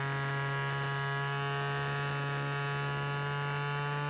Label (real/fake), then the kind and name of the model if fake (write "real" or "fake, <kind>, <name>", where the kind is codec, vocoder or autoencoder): real